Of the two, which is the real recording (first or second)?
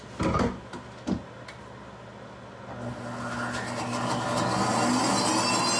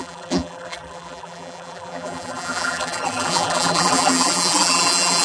first